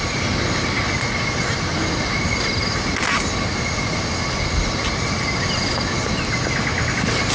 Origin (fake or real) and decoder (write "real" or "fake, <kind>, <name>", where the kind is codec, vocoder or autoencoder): real